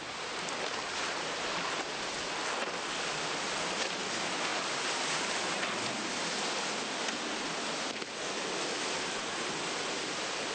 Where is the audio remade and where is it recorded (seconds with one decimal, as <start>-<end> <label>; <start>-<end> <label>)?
0.0-10.5 recorded